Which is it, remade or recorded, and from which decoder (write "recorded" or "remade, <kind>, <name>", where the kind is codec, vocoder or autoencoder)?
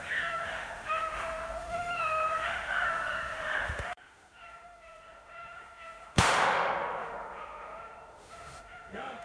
remade, autoencoder, DAC-VAE